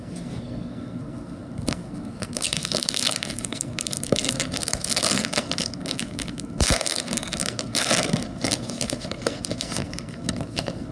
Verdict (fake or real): fake